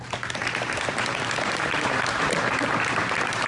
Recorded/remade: remade